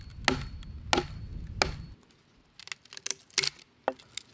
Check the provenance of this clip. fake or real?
real